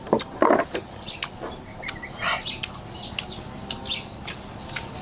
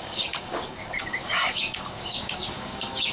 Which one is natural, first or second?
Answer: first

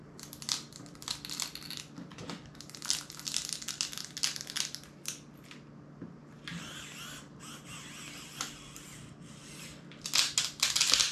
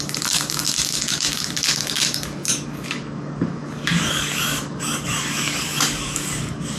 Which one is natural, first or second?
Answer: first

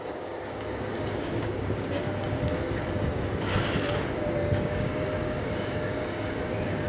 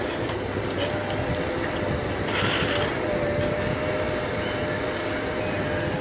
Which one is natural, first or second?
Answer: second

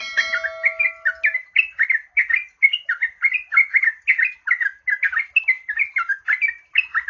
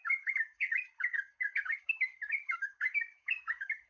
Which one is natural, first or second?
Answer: first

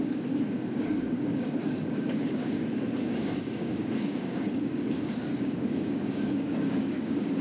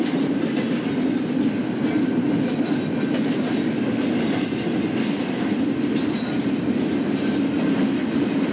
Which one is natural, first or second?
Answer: second